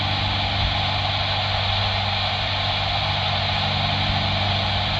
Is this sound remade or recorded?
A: recorded